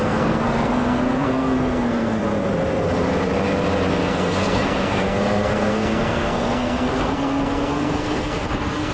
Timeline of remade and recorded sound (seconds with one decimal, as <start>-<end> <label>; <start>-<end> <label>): 0.0-2.2 remade; 2.2-3.9 recorded; 3.9-8.9 remade